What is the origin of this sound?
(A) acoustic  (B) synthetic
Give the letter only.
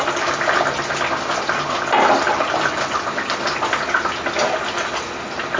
A